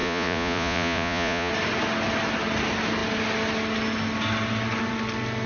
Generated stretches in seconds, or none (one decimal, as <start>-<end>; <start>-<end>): 0.0-1.5